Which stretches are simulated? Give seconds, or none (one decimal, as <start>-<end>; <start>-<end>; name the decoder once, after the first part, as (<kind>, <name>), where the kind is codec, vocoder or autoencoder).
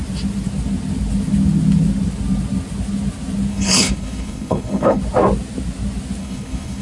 3.5-5.0 (codec, HILCodec); 6.2-6.8